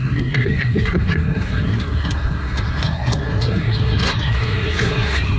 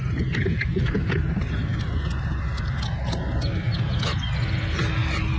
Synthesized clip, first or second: first